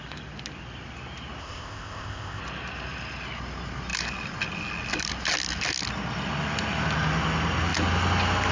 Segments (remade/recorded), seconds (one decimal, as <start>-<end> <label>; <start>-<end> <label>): 0.0-1.4 recorded; 1.4-2.4 remade; 2.4-8.5 recorded

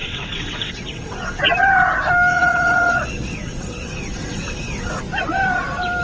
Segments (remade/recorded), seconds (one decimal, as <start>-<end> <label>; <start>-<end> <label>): 0.0-1.4 remade; 1.4-2.3 recorded; 2.3-5.0 remade; 5.0-6.0 recorded

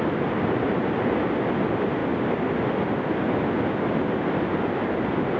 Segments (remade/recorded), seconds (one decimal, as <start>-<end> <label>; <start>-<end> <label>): 0.0-5.4 recorded

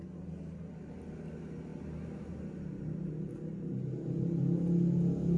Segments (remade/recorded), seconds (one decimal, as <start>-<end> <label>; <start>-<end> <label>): 0.0-5.4 recorded